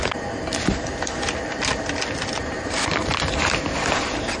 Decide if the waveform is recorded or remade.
recorded